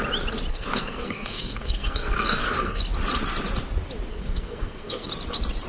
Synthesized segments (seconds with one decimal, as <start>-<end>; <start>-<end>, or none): 0.5-2.8; 4.1-5.1

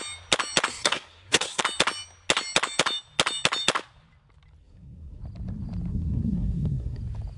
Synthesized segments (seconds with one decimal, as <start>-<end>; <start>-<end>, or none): 0.7-1.6; 4.6-5.2; 5.9-7.0